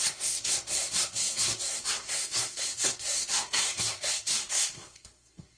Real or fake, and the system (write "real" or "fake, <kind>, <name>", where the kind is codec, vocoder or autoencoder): fake, codec, SNAC